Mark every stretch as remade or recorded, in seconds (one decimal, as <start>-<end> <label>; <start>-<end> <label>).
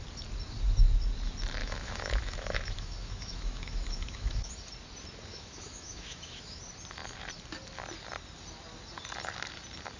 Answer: 0.0-1.6 recorded; 1.6-4.5 remade; 4.5-5.3 recorded; 5.3-6.6 remade; 6.6-10.0 recorded